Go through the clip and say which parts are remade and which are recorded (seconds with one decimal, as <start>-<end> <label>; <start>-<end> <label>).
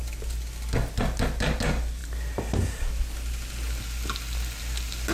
0.0-5.1 recorded